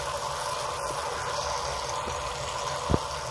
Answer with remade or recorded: recorded